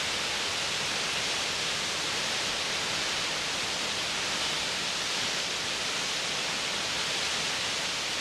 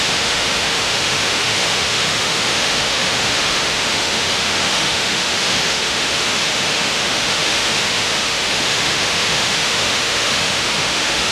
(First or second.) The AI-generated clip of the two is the second